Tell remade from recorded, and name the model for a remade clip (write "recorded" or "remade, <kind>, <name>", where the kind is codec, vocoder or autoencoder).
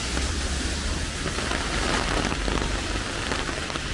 recorded